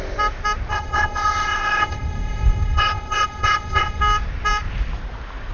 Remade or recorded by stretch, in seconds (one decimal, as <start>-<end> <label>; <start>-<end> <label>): 0.0-0.7 recorded; 0.7-4.0 remade; 4.0-5.5 recorded